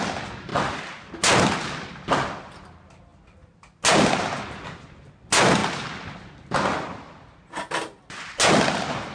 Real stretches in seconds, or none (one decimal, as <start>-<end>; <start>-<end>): 0.0-9.1